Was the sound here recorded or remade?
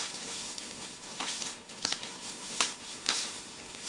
remade